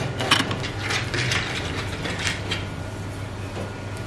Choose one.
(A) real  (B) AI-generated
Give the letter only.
A